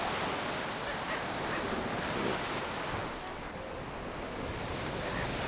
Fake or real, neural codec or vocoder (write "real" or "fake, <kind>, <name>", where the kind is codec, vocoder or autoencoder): real